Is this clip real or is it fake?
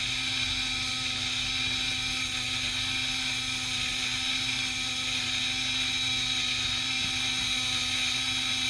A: real